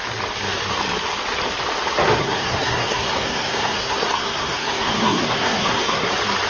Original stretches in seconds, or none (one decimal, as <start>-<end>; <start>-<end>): 0.0-2.2; 6.1-6.5

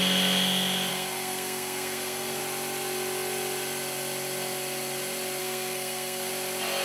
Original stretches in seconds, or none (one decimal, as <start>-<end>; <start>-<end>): 0.0-0.9; 2.4-5.4; 6.3-6.8

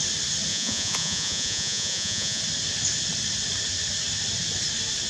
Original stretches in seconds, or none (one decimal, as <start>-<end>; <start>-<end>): 0.0-0.5; 2.4-5.1